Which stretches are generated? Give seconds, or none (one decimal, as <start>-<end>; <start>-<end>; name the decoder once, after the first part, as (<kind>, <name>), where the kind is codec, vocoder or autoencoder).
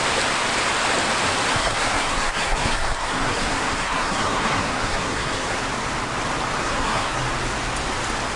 1.5-5.6 (codec, SNAC); 6.6-7.2